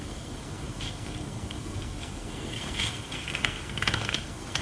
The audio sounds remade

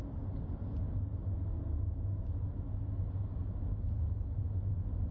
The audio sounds recorded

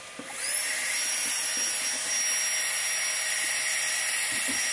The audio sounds recorded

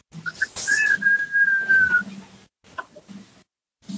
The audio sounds recorded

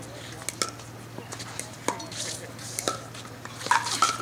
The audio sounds recorded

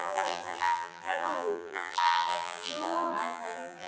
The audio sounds remade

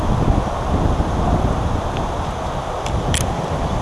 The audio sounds recorded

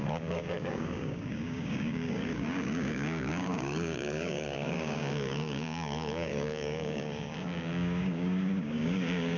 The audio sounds remade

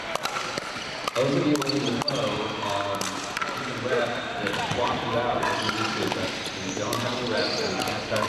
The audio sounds recorded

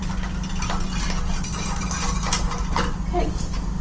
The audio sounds recorded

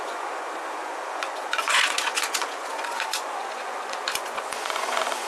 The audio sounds remade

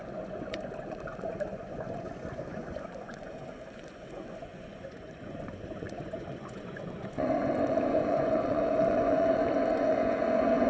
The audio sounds remade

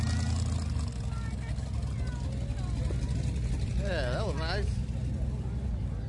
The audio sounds recorded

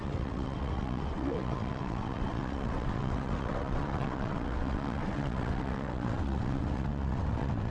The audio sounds remade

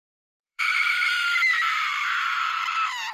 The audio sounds remade